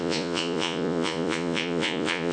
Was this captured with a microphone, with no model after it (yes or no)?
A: no